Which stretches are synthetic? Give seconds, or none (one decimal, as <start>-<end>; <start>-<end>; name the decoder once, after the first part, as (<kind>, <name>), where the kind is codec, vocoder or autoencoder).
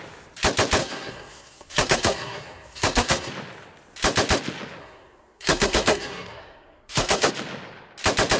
0.8-3.3 (codec, SNAC); 4.8-7.3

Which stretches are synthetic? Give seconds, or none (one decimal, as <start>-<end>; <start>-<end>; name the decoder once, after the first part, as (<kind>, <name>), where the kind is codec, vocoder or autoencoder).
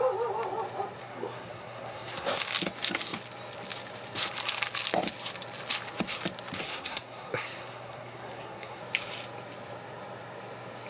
1.0-2.4 (codec, SNAC); 6.6-8.8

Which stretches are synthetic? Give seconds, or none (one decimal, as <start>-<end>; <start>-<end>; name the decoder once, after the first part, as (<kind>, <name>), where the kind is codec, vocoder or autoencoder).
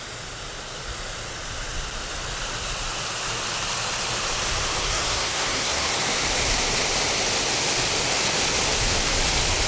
4.8-5.9 (codec, SNAC)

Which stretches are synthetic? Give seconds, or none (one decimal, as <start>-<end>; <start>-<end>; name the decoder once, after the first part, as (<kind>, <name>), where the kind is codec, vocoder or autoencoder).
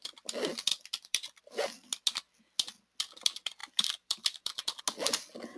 0.7-1.4 (vocoder, BigVGAN v2); 3.6-4.8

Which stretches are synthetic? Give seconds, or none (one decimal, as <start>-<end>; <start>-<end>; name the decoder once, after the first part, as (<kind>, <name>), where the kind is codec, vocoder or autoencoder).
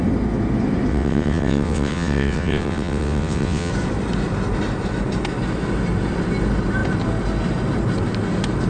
0.9-3.7 (vocoder, WaveNeXt)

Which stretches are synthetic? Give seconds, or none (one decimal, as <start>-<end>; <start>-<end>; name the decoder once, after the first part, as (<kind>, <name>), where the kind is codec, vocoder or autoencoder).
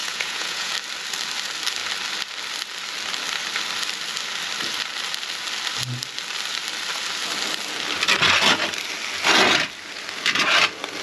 0.0-0.7 (vocoder, Vocos)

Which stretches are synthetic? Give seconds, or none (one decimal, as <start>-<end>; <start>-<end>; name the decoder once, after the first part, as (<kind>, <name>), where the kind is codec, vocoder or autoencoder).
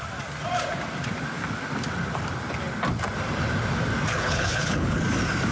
4.1-5.0 (codec, HILCodec)